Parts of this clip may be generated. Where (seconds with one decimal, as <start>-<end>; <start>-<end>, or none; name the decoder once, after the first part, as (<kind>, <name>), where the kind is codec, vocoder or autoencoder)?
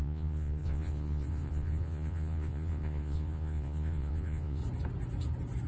0.0-4.6 (vocoder, Vocos)